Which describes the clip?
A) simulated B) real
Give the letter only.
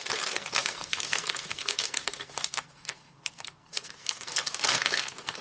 A